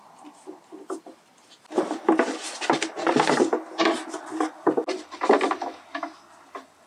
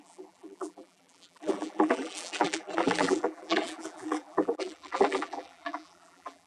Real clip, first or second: first